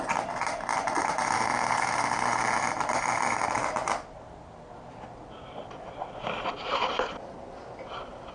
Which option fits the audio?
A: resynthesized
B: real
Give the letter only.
A